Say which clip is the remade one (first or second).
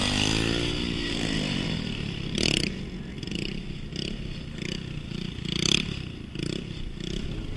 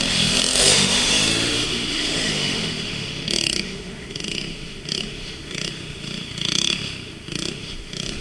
second